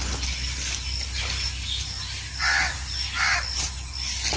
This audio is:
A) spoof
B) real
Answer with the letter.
B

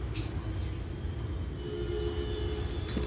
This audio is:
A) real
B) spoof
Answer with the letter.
A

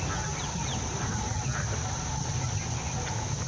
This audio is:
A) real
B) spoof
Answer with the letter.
B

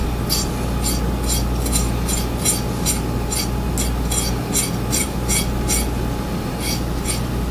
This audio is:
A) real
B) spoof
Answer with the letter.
A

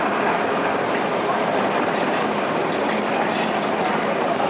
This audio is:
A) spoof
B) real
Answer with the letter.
A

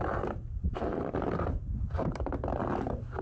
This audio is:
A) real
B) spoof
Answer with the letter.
B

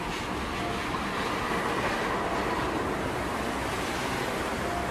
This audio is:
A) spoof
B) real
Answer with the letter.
B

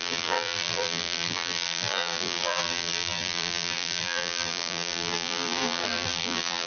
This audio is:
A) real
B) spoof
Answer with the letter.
B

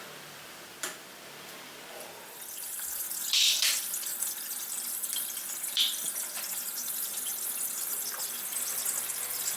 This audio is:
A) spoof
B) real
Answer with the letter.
A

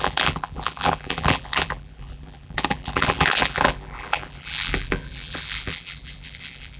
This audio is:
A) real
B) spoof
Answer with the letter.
B